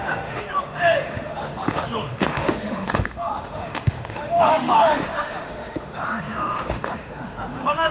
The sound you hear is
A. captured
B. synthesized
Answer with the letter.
B